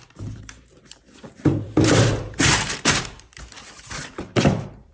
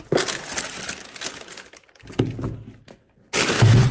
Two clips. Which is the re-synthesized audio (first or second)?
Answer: first